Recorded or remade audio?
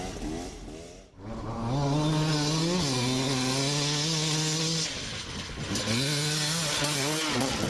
recorded